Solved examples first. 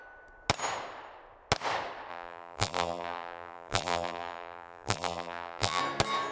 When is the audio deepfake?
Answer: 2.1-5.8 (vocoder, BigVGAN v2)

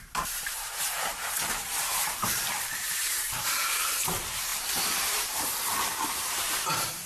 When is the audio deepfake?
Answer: 0.0-7.1 (vocoder, BigVGAN v2)

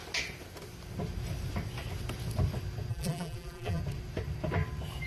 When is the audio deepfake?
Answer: 2.9-3.8 (vocoder, BigVGAN v2)

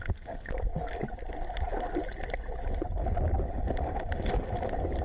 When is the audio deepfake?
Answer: none